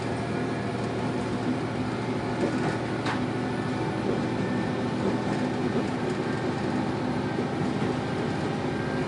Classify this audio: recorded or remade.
recorded